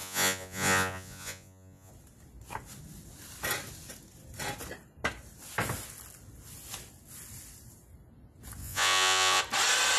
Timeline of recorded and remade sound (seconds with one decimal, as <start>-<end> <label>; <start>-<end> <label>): 0.0-1.9 remade; 1.9-8.6 recorded; 8.6-9.4 remade; 9.4-10.0 recorded